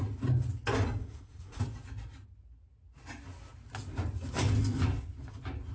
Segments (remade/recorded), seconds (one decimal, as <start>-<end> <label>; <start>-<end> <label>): 0.0-1.0 recorded; 1.0-1.6 remade; 1.6-5.7 recorded